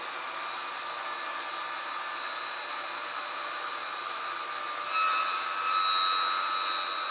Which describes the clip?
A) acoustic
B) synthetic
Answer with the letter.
A